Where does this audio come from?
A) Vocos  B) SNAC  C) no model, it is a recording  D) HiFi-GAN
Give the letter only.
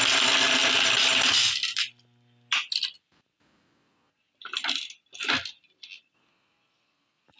C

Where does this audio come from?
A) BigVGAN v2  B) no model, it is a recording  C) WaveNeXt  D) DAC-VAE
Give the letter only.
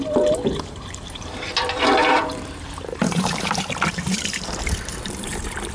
A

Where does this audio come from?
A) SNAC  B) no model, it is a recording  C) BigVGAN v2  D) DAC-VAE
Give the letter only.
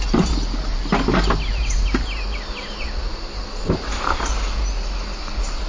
B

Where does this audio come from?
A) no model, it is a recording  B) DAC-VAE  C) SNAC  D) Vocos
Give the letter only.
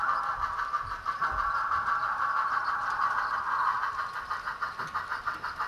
A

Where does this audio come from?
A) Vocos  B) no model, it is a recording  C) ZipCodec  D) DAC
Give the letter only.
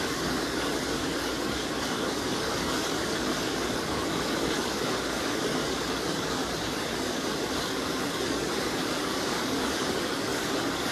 D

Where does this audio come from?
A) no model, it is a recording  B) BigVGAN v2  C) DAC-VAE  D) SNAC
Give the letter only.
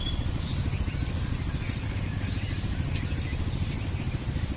A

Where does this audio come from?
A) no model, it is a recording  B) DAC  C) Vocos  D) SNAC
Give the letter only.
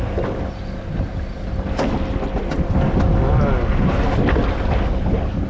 A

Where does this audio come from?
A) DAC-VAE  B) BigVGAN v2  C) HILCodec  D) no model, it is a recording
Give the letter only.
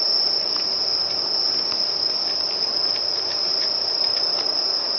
D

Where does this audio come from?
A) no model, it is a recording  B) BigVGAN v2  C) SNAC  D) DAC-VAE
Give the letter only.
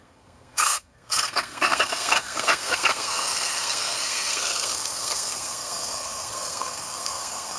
C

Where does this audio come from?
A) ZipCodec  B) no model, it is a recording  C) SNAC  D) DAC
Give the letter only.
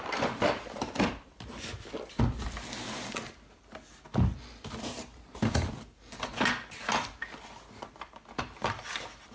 B